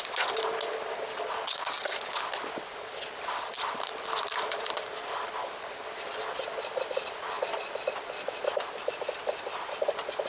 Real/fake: real